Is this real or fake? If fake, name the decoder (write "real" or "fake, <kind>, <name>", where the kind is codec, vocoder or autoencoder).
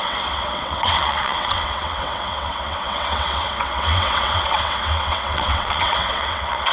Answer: fake, vocoder, WaveNeXt